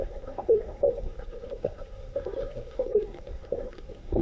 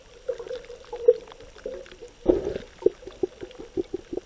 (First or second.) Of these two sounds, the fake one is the first